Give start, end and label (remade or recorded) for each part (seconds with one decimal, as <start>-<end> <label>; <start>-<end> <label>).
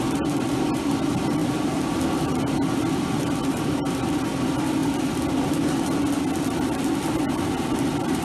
0.0-8.2 recorded